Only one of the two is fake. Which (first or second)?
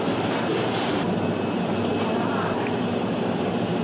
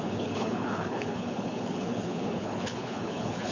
second